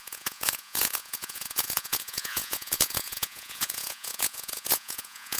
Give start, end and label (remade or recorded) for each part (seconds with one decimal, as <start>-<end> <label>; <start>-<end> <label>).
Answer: 0.0-5.4 remade